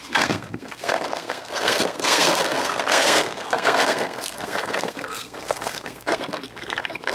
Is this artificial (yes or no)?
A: yes